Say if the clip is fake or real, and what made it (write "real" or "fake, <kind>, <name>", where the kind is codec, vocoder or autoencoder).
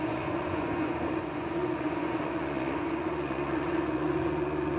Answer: fake, vocoder, Vocos